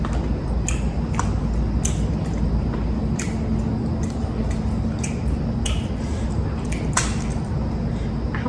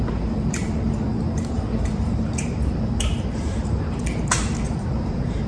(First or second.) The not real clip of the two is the second